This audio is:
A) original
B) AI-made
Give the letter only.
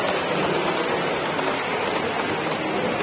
A